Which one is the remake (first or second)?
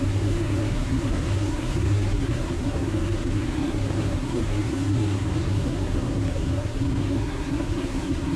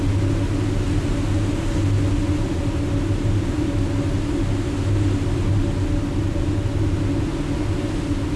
first